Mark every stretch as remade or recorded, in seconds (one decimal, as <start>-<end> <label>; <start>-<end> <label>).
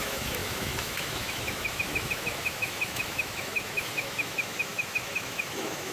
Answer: 0.0-5.9 remade